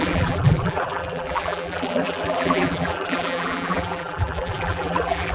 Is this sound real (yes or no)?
no